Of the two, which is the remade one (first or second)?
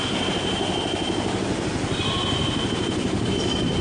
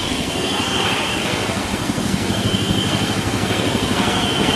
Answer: second